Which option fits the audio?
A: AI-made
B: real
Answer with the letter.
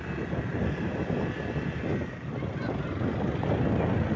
B